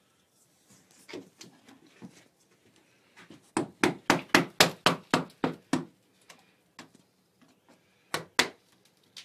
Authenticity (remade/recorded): recorded